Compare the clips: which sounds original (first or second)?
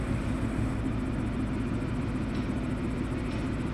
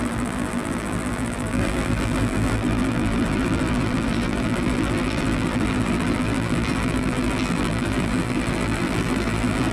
first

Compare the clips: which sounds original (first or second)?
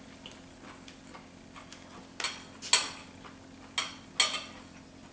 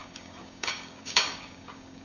first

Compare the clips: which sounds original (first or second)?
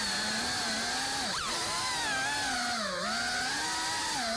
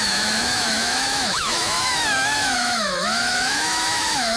first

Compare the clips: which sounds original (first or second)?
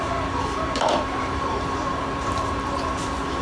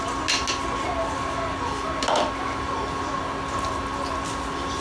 second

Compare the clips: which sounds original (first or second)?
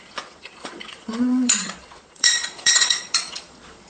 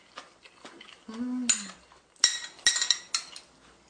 second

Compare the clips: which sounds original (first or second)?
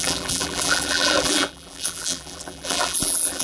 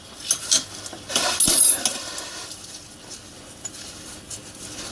second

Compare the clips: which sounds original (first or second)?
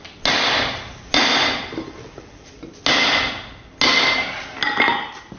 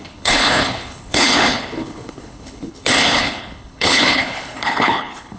first